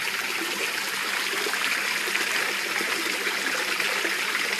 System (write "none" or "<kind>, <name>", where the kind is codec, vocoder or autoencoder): none